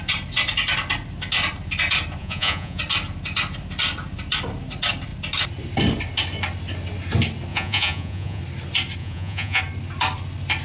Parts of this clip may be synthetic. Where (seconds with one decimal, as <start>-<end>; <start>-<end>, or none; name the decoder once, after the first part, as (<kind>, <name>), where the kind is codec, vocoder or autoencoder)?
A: 2.2-2.8 (vocoder, Vocos); 7.5-8.4; 9.0-9.6